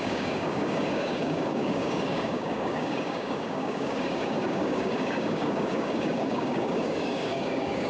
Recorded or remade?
remade